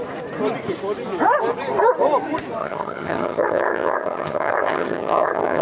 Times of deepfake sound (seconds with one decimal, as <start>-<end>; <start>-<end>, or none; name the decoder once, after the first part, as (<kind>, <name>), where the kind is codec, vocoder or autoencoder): 2.6-5.6 (vocoder, HiFi-GAN)